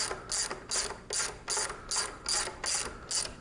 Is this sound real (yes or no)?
yes